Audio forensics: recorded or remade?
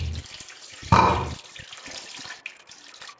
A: remade